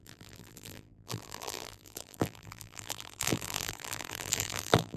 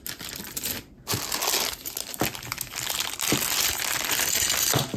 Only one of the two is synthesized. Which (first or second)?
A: first